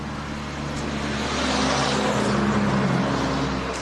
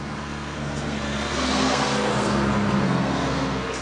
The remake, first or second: second